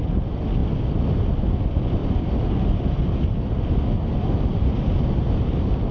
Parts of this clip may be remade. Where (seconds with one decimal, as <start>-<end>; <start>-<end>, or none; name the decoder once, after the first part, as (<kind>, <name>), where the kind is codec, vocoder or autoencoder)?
none